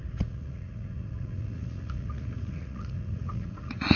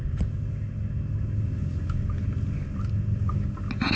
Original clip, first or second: second